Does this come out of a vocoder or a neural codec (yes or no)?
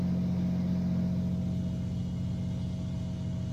no